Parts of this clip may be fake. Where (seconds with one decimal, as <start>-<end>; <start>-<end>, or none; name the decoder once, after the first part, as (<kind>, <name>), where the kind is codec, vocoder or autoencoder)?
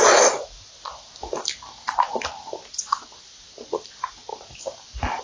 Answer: 4.3-5.2 (vocoder, BigVGAN v2)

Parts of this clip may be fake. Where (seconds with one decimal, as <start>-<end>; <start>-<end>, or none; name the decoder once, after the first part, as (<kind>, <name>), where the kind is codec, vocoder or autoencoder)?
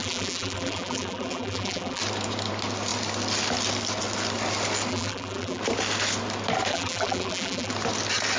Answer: 0.0-2.0 (vocoder, BigVGAN v2); 4.9-5.6; 6.7-7.7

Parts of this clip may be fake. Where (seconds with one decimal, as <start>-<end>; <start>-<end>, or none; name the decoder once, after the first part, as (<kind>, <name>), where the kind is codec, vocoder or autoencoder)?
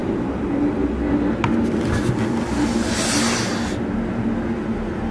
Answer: none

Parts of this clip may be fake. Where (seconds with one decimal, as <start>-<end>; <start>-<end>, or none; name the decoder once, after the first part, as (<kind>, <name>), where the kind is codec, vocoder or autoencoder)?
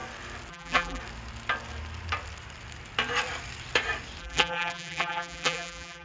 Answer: 0.5-1.0 (vocoder, BigVGAN v2); 4.2-6.0